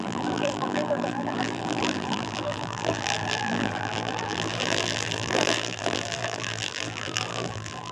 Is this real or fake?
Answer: fake